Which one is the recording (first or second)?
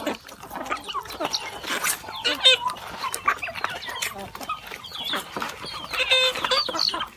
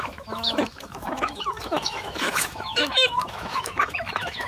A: first